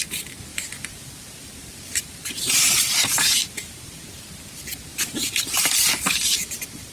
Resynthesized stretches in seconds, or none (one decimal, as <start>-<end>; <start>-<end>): 0.5-4.1; 4.9-5.6